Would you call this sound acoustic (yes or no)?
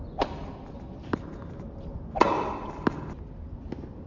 yes